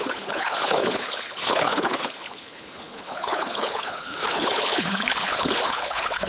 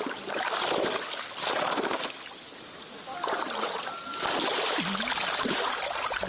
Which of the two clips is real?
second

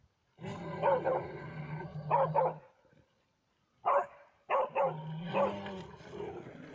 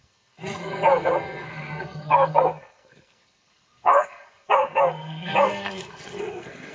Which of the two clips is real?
first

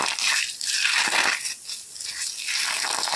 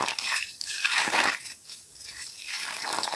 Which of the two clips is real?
first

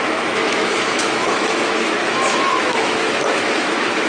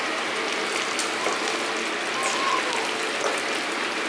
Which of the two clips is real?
second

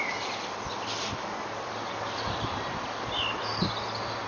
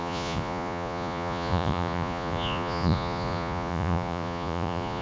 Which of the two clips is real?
first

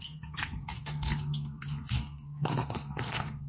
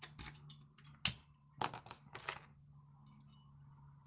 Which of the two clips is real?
second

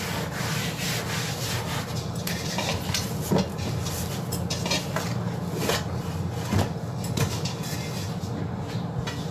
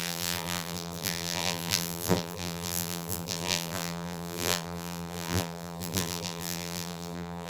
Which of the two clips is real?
first